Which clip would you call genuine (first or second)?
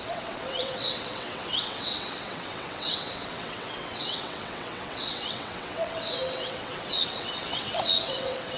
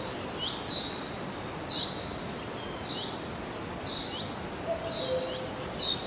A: second